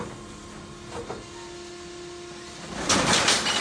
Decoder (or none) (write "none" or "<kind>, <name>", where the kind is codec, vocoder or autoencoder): none